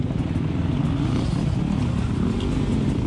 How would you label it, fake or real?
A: real